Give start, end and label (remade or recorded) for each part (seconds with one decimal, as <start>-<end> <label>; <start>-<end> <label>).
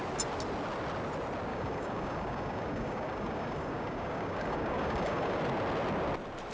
0.0-1.5 recorded; 1.5-5.4 remade; 5.4-6.5 recorded